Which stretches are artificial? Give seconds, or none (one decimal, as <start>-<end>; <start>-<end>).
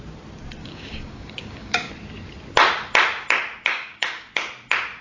0.6-1.9; 3.7-4.3